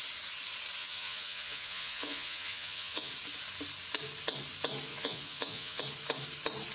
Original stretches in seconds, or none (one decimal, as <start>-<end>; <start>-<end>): 0.0-0.8; 3.1-4.9; 5.8-6.7